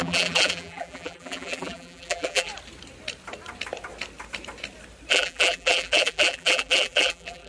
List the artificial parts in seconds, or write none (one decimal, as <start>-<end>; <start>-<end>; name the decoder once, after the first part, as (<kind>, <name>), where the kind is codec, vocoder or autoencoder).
0.0-2.5 (vocoder, BigVGAN v2); 5.1-7.5